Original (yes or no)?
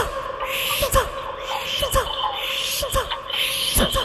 yes